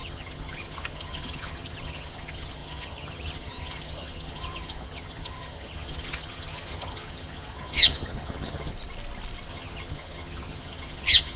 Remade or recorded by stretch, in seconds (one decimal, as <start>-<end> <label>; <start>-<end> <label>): 0.0-8.7 remade; 8.7-9.5 recorded; 9.5-11.4 remade